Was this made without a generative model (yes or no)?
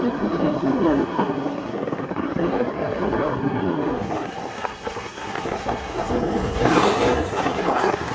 no